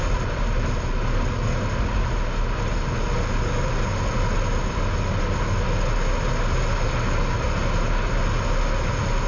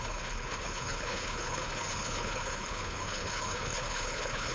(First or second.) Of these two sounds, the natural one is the first